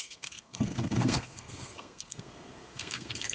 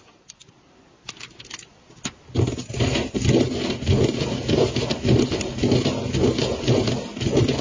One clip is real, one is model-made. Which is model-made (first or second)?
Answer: first